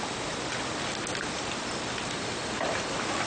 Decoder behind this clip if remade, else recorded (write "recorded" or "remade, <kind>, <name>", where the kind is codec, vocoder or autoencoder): remade, vocoder, BigVGAN v2